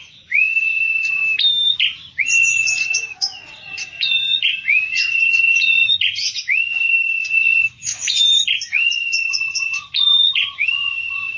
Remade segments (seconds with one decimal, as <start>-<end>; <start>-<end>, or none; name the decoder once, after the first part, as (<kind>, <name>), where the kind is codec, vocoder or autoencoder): 0.0-1.2 (vocoder, Vocos); 2.2-11.4